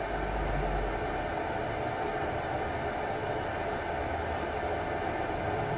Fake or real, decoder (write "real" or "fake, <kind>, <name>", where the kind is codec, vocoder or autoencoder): real